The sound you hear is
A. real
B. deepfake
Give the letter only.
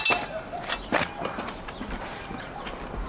A